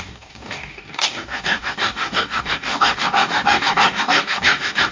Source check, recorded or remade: remade